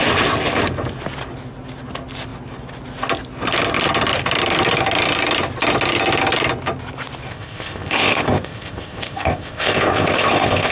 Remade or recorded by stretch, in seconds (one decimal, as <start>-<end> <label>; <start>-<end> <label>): 0.0-7.3 recorded; 7.3-10.7 remade